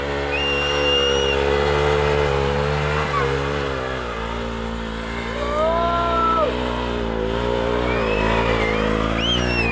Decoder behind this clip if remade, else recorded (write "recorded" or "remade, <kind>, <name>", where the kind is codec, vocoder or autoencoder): recorded